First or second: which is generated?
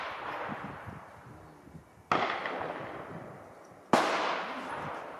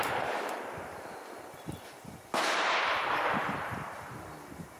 second